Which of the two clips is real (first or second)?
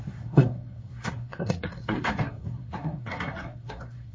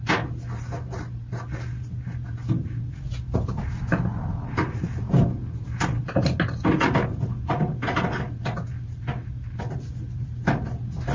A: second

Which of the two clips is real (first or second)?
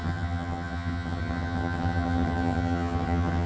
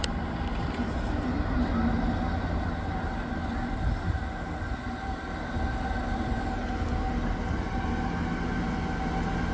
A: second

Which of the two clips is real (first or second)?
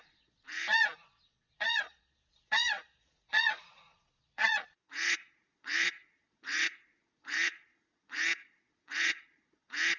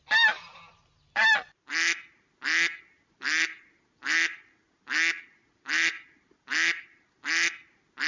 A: second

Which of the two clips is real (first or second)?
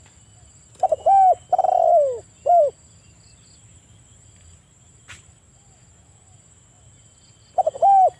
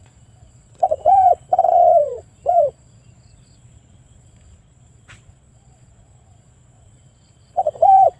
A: first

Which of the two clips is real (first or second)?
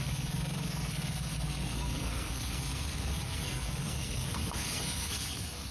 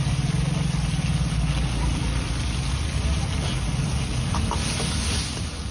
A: second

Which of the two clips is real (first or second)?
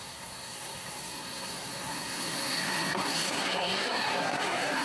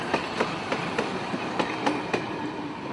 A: second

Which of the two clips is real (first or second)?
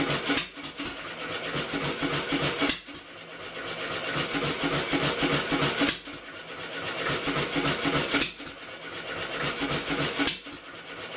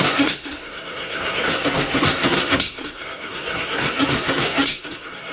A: first